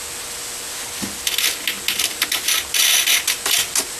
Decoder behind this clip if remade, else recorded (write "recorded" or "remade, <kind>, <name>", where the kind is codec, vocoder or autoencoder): recorded